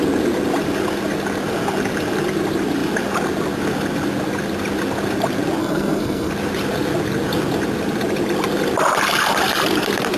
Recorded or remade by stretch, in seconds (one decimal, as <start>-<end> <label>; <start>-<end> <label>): 0.0-5.6 recorded; 5.6-6.3 remade; 6.3-10.2 recorded